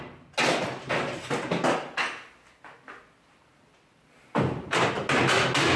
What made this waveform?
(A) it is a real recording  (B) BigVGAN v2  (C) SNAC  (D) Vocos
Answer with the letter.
A